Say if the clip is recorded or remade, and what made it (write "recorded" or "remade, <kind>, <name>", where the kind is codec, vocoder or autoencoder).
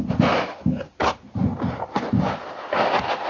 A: recorded